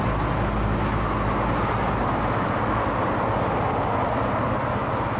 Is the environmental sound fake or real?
real